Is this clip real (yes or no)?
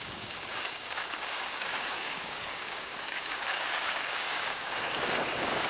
no